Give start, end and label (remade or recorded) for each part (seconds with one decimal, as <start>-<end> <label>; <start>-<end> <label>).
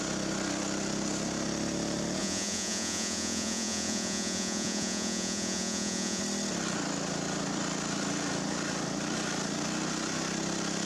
0.0-2.2 recorded; 2.2-6.2 remade; 6.2-10.9 recorded